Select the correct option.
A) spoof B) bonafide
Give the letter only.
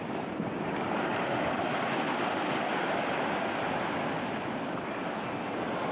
B